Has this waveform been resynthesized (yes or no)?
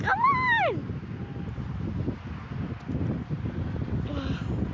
no